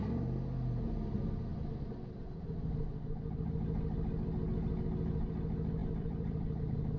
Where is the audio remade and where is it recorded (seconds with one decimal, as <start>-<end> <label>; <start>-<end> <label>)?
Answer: 0.0-5.8 recorded; 5.8-6.6 remade; 6.6-7.0 recorded

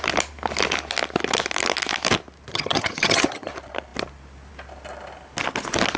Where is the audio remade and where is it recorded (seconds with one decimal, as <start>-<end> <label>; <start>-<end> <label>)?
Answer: 0.0-2.5 recorded; 2.5-3.5 remade; 3.5-6.0 recorded

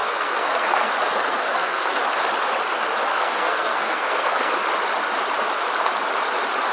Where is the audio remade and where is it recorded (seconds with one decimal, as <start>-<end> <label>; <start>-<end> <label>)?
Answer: 0.0-0.9 remade; 0.9-1.3 recorded; 1.3-2.0 remade; 2.0-3.1 recorded; 3.1-4.5 remade; 4.5-6.7 recorded

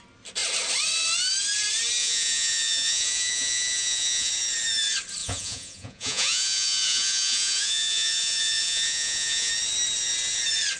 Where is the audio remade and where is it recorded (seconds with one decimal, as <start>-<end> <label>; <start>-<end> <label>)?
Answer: 0.0-2.0 recorded; 2.0-4.3 remade; 4.3-5.2 recorded; 5.2-9.5 remade; 9.5-10.8 recorded

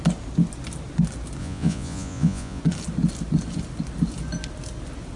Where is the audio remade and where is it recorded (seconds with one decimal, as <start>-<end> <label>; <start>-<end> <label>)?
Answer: 0.0-1.4 recorded; 1.4-2.6 remade; 2.6-5.2 recorded